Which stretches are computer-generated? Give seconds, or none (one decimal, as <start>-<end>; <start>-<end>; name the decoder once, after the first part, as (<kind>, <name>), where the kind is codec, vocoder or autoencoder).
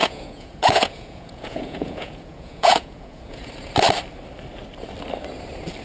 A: 0.0-3.5 (vocoder, Vocos)